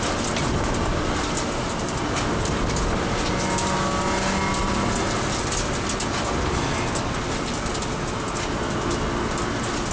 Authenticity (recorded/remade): recorded